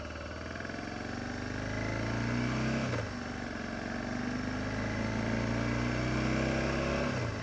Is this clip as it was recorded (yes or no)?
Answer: yes